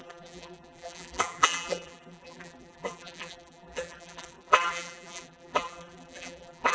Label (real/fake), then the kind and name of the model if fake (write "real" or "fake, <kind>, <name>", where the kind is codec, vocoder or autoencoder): fake, vocoder, BigVGAN v2